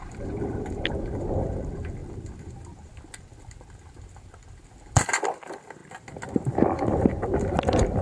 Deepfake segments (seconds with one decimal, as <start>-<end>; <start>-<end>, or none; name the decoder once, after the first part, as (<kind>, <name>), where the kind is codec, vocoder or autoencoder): 0.0-3.3 (vocoder, BigVGAN v2); 5.3-5.8; 6.5-8.0